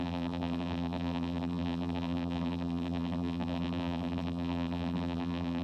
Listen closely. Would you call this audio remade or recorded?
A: remade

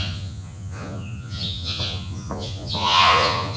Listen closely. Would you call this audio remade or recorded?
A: remade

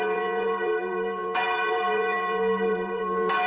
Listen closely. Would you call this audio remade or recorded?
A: remade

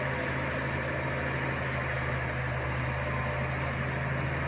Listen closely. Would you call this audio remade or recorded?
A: recorded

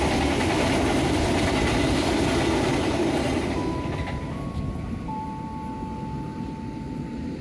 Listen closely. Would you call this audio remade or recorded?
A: recorded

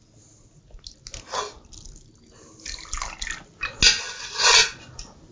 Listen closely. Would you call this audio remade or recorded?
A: recorded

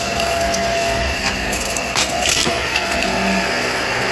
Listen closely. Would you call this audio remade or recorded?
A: remade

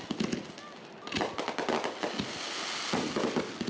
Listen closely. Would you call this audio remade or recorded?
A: recorded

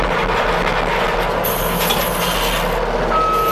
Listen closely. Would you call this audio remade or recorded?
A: recorded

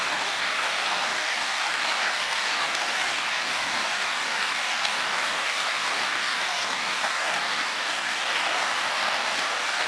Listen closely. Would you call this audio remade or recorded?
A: remade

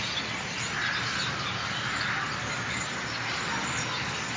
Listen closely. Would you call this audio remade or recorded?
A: recorded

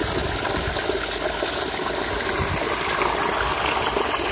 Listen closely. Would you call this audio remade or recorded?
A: recorded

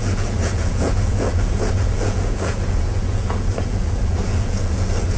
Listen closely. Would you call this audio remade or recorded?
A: remade